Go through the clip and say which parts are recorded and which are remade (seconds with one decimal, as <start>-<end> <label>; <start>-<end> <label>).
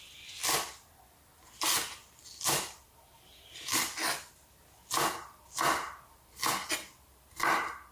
0.0-7.9 recorded